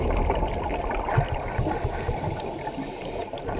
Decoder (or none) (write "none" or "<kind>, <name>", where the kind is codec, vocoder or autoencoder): none